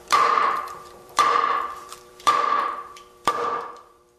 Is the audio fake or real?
fake